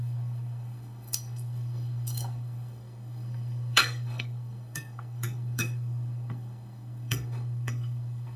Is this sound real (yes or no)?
no